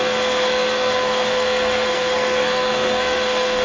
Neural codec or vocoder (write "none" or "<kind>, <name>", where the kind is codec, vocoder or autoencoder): codec, SNAC